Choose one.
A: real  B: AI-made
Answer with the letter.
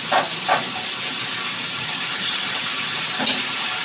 A